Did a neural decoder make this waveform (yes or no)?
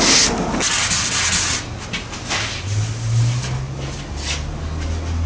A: no